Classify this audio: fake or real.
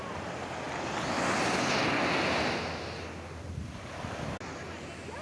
real